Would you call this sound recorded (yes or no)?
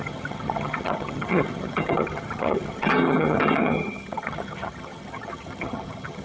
no